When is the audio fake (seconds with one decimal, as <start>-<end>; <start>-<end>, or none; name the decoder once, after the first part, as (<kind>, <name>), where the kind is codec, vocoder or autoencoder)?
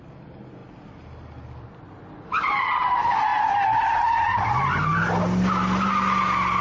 none